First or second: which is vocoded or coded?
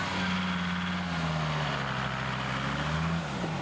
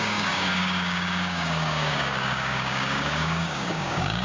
second